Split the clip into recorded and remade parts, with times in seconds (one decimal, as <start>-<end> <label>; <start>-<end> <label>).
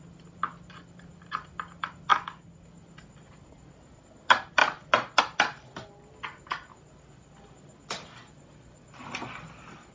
0.0-9.9 recorded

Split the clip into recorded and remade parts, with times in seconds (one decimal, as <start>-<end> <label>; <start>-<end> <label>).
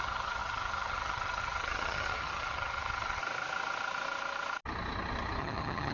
0.0-3.2 remade; 3.2-5.4 recorded; 5.4-5.9 remade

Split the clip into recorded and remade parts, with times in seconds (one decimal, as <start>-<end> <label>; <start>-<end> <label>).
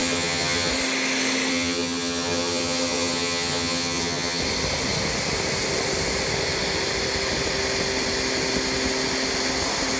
0.0-0.7 remade; 0.7-1.5 recorded; 1.5-4.4 remade; 4.4-10.0 recorded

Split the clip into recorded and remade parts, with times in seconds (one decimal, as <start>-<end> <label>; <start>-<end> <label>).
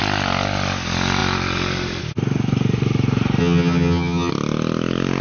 0.0-3.4 recorded; 3.4-4.3 remade; 4.3-5.2 recorded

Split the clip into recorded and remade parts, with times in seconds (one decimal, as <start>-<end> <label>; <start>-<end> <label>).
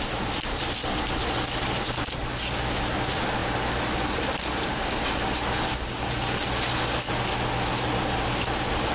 0.0-8.9 recorded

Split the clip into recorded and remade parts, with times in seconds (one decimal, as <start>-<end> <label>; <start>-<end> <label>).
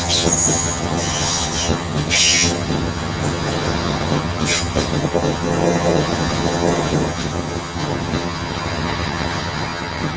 0.0-10.2 remade